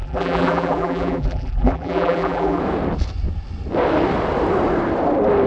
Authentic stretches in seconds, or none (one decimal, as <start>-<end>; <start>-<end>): 2.6-5.5